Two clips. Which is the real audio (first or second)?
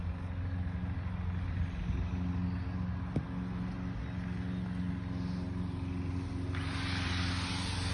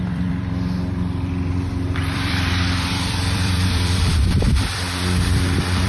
first